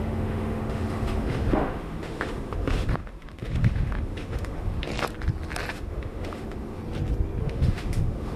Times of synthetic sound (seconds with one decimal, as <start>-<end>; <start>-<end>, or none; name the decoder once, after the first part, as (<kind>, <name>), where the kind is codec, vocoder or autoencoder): 0.0-4.9 (autoencoder, DAC-VAE); 5.7-6.8; 7.4-8.4